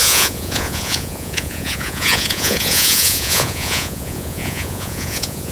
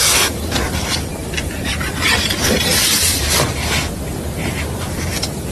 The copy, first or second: first